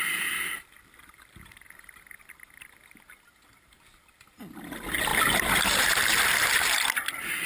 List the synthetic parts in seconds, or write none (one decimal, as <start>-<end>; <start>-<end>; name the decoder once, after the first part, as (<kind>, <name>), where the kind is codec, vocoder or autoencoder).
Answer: none